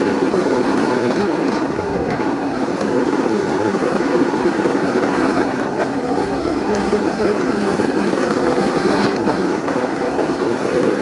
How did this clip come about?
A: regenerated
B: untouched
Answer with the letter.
A